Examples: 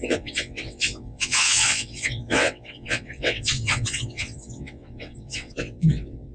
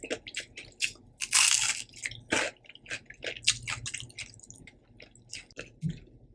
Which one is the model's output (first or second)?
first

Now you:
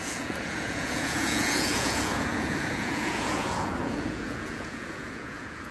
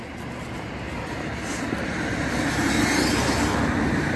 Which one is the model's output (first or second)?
first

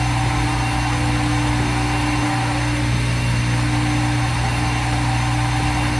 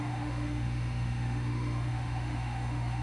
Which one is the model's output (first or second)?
second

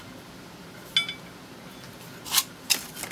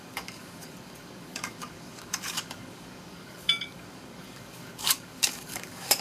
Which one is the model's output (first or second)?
second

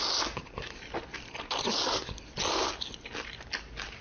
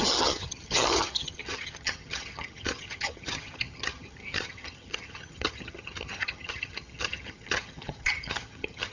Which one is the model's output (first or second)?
second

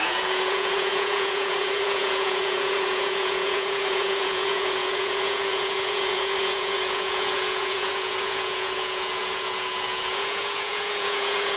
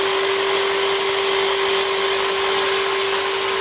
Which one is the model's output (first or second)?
first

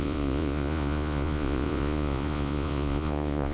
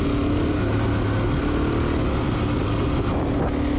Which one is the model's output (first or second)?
first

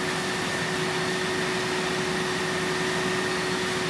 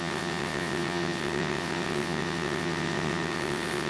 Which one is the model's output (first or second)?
second